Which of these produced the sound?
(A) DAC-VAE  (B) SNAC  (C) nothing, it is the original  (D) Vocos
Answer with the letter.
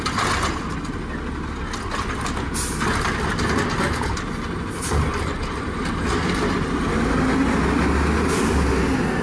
C